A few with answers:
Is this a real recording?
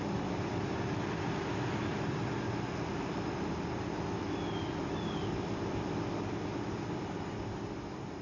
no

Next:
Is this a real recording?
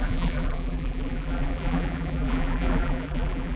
no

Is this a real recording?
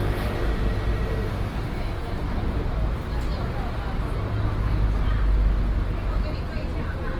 yes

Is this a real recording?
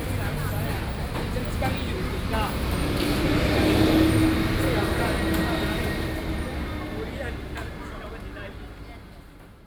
yes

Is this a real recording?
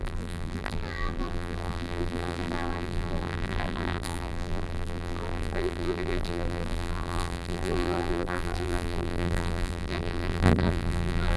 no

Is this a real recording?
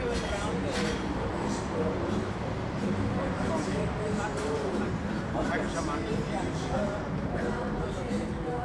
no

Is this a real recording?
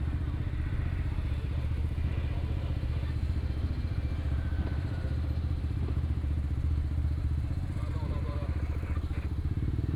no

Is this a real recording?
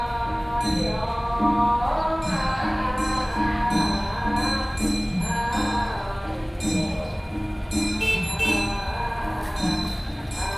yes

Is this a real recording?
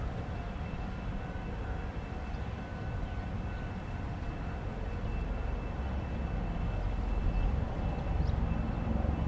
yes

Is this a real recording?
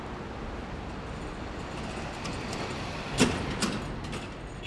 yes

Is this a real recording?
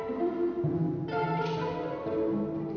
yes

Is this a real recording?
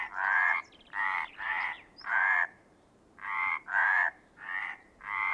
no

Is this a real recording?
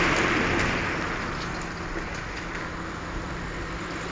yes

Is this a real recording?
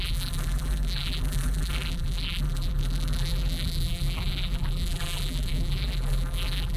no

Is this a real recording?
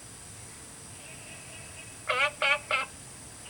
yes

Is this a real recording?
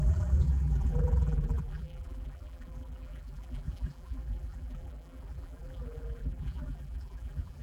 no